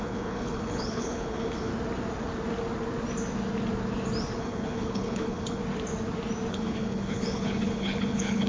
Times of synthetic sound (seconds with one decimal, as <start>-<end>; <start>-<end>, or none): 0.0-1.7; 4.4-5.6; 6.5-8.5